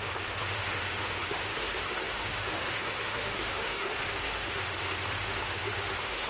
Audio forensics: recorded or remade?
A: remade